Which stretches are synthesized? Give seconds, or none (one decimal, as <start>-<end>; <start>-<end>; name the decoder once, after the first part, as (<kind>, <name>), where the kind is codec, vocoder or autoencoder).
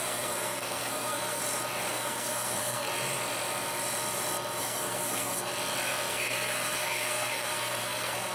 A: 0.0-1.4 (codec, SNAC); 1.9-2.9; 4.6-5.5; 6.1-8.3